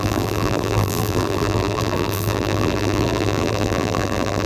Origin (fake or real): fake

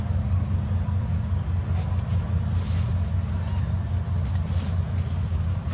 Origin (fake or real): real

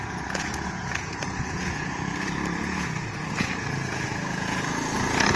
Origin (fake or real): fake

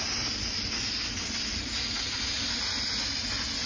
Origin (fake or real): real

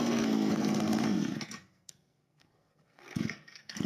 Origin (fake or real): fake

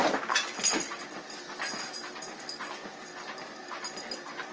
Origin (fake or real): real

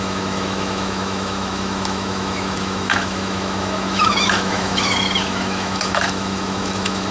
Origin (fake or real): fake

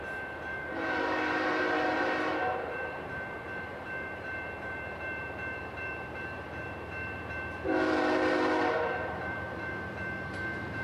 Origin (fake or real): fake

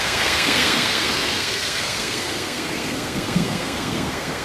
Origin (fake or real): fake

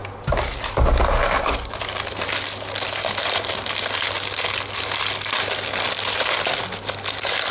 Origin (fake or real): real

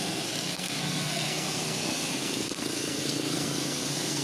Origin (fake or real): fake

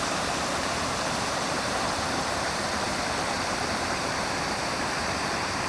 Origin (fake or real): fake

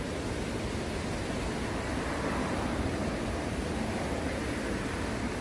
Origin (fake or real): real